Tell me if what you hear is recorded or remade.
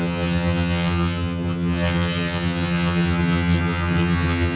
remade